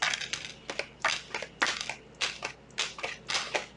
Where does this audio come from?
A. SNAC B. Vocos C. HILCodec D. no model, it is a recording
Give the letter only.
D